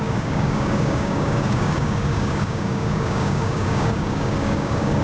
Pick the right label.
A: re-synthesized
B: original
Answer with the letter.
A